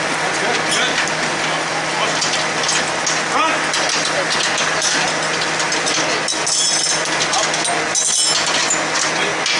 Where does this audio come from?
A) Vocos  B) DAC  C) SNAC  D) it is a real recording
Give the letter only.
D